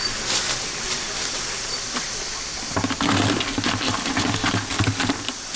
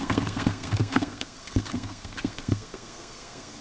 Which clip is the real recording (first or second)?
first